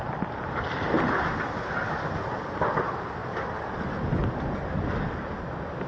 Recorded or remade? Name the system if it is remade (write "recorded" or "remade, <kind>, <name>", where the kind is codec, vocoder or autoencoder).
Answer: recorded